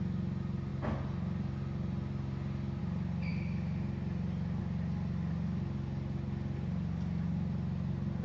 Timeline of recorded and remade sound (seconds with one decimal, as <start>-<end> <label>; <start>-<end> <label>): 0.0-8.2 recorded